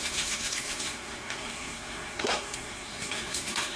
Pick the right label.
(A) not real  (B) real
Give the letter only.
A